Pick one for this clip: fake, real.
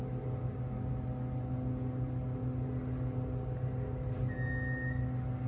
real